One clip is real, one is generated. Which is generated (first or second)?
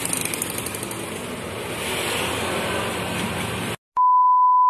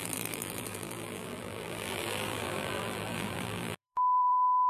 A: second